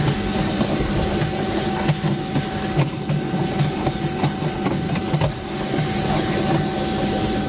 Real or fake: real